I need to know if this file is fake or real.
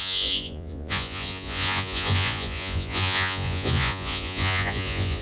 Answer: fake